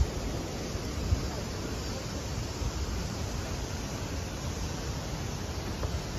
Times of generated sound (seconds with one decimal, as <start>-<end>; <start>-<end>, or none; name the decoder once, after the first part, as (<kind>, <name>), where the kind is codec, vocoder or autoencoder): none